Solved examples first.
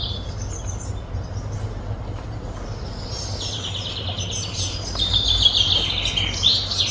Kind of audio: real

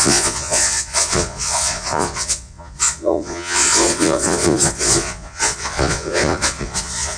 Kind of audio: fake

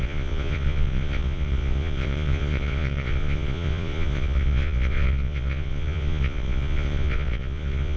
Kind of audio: fake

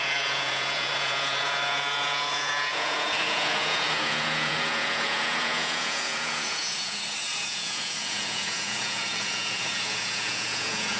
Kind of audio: fake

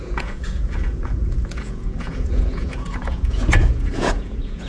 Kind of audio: fake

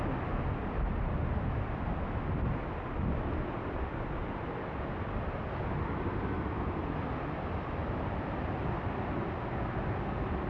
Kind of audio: real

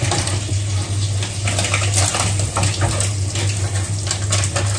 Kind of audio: real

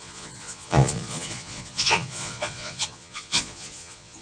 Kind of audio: fake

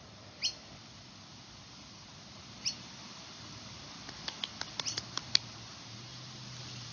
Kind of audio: real